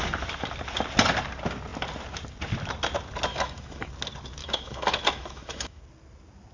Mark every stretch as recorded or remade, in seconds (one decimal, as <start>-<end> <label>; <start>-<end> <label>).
0.0-3.3 recorded; 3.3-3.9 remade; 3.9-4.4 recorded; 4.4-5.8 remade; 5.8-6.5 recorded